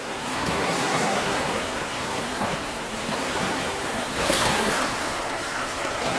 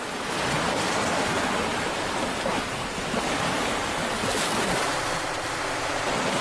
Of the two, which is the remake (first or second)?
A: first